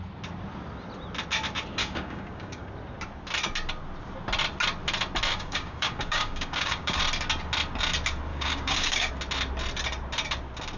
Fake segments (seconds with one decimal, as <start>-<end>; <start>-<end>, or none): 1.8-2.7; 5.3-7.0; 8.3-9.1